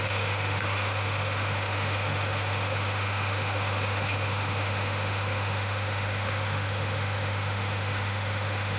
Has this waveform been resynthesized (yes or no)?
yes